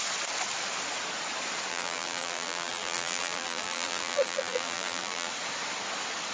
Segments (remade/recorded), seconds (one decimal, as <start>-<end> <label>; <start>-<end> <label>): 0.0-1.7 recorded; 1.7-5.3 remade; 5.3-6.3 recorded